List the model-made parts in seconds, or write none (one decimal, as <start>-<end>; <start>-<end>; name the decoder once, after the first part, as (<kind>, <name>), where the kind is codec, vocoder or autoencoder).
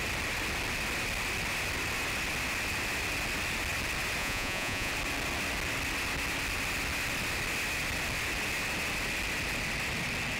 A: 4.2-4.9 (vocoder, Vocos)